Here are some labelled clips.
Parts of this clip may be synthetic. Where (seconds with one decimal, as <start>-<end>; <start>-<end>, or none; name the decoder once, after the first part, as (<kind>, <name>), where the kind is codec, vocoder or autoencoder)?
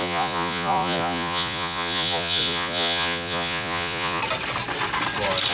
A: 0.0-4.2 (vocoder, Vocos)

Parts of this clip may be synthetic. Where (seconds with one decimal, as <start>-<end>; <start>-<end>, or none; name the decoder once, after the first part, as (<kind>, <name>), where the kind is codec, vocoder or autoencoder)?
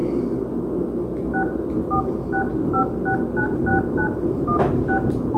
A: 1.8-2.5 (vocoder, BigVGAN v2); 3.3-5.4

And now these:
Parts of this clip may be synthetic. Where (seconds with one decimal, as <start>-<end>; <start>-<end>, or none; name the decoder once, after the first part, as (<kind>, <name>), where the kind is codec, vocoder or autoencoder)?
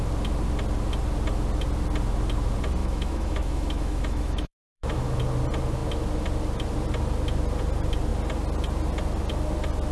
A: 2.8-5.2 (autoencoder, DAC-VAE)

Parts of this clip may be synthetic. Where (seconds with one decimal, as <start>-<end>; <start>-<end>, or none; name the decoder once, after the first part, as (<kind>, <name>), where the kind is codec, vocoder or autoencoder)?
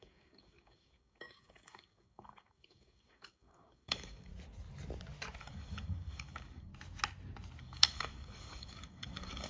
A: 0.0-4.3 (codec, DAC); 5.4-6.7; 7.6-9.5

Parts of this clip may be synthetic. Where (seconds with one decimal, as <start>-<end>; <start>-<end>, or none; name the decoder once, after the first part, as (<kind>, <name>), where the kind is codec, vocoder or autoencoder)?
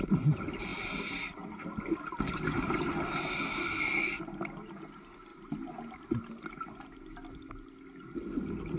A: none